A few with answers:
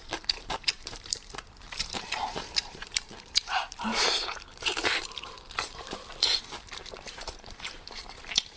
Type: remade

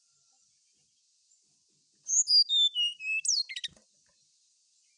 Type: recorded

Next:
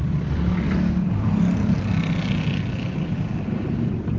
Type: remade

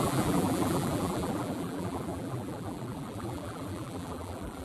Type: remade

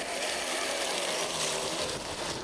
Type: recorded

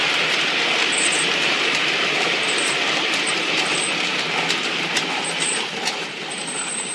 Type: remade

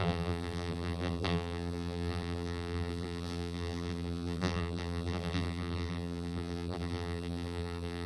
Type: remade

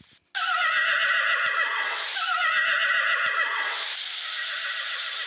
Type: recorded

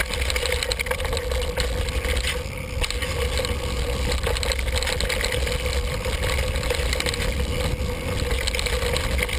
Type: recorded